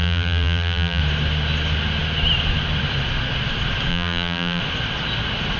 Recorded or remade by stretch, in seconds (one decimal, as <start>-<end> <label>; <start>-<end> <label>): 0.0-1.0 remade; 1.0-3.9 recorded; 3.9-4.6 remade; 4.6-5.6 recorded